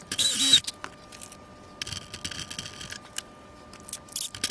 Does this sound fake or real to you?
real